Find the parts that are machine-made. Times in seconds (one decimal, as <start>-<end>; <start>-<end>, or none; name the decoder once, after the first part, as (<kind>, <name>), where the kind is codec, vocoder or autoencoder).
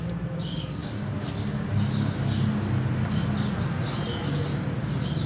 none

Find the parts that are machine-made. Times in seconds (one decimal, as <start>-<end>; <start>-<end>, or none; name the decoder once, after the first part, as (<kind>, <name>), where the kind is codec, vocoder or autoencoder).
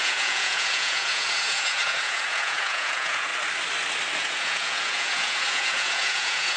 0.0-3.3 (vocoder, Vocos); 4.2-6.6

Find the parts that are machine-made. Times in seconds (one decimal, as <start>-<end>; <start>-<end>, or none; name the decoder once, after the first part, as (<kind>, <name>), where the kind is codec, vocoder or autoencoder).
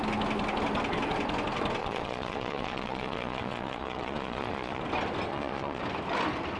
1.8-4.8 (vocoder, Vocos); 5.3-5.8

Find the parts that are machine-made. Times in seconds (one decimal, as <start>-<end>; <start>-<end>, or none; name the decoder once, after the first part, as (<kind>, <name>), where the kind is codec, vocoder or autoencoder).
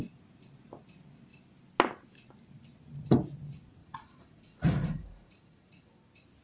3.8-5.9 (vocoder, Vocos)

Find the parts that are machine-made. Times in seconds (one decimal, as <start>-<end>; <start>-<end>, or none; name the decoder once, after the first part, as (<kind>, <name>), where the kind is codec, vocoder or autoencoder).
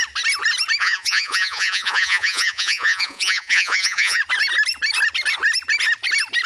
0.8-4.2 (vocoder, Vocos)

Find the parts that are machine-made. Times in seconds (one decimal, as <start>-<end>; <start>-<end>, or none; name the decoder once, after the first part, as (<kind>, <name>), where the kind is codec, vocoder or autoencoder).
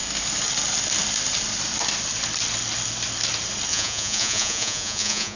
3.7-5.4 (vocoder, Vocos)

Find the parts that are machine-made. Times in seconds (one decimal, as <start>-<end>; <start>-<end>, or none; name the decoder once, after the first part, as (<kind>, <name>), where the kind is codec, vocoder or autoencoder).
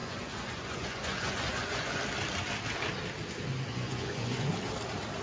0.0-2.0 (vocoder, Vocos); 3.7-4.5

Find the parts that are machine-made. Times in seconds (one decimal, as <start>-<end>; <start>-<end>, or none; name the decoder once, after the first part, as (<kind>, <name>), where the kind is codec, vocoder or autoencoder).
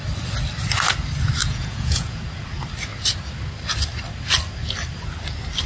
1.4-2.2 (vocoder, Vocos)